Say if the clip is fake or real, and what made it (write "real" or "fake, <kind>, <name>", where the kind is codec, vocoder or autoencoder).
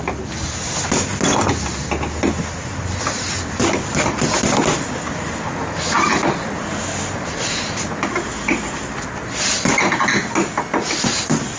real